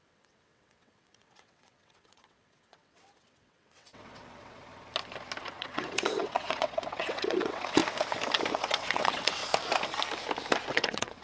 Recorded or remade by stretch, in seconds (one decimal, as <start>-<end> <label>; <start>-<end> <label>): 0.0-4.6 remade; 4.6-5.4 recorded; 5.4-7.8 remade; 7.8-8.5 recorded; 8.5-9.4 remade; 9.4-10.7 recorded; 10.7-11.2 remade